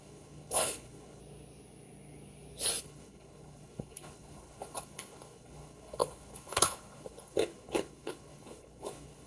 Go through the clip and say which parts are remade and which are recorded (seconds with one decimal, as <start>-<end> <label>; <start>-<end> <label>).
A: 0.0-1.2 remade; 1.2-2.8 recorded; 2.8-9.3 remade